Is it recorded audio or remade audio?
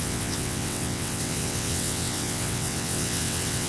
remade